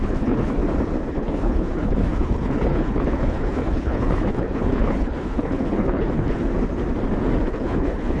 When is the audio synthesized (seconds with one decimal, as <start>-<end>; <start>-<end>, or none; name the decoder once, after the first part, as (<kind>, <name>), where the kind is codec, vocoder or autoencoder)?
0.0-0.6 (codec, HILCodec); 1.1-6.5; 7.5-8.2

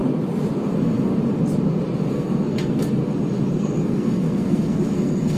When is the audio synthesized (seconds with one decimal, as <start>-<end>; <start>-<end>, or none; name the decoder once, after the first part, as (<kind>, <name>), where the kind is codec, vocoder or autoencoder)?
0.7-1.1 (codec, SNAC); 2.1-3.0; 3.5-5.4

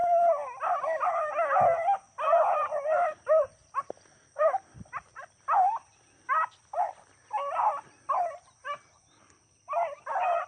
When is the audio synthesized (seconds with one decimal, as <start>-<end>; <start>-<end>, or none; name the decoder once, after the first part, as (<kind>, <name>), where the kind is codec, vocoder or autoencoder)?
none

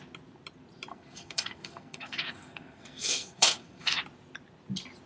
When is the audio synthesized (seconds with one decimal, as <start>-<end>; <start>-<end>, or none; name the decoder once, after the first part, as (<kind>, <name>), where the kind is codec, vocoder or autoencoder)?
0.9-4.0 (codec, SNAC)

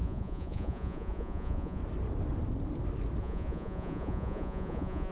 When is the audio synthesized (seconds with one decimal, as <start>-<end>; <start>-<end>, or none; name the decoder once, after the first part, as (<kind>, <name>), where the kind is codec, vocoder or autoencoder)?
0.0-1.8 (vocoder, Vocos); 3.2-5.1